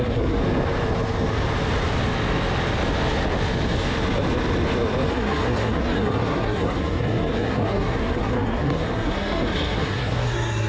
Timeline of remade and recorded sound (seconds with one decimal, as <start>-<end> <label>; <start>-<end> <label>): 0.0-0.4 remade; 0.4-5.1 recorded; 5.1-10.7 remade